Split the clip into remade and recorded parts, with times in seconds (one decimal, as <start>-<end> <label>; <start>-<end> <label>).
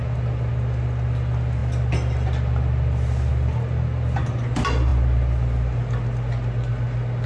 0.0-7.3 recorded